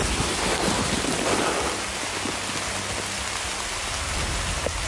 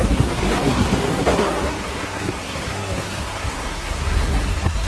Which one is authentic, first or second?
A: first